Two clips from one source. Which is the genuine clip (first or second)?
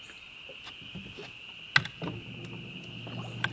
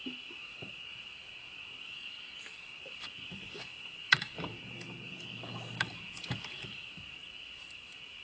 first